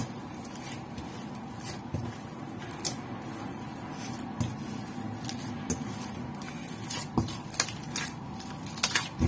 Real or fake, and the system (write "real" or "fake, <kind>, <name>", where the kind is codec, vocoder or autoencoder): real